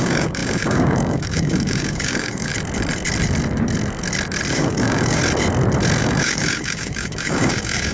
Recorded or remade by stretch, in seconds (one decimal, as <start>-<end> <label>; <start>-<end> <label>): 0.0-2.5 remade; 2.5-4.5 recorded; 4.5-5.2 remade; 5.2-6.0 recorded; 6.0-7.9 remade